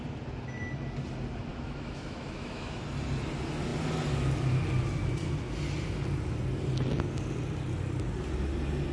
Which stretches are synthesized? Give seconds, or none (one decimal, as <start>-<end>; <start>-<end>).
1.5-2.8